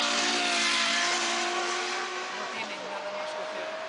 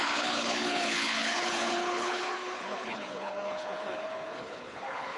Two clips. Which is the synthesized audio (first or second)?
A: second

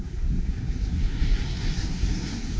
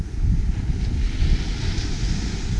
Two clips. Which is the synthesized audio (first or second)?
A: first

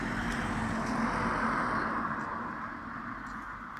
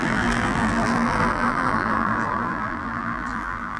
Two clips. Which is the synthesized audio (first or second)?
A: second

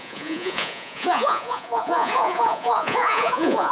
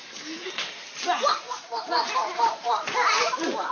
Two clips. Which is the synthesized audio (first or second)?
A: first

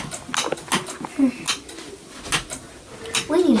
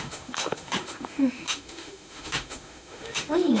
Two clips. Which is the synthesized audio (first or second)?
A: second